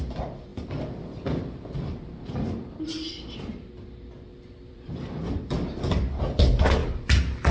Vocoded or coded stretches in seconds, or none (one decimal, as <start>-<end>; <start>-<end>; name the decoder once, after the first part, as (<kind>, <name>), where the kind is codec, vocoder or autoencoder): 0.5-3.7 (vocoder, BigVGAN v2); 4.3-5.4; 6.8-7.5